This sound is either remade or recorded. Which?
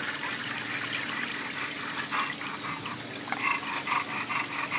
recorded